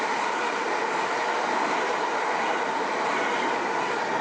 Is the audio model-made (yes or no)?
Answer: no